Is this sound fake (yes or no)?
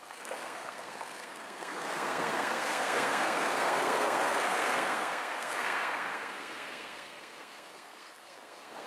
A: yes